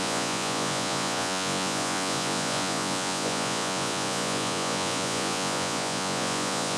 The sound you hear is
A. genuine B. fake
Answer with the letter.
B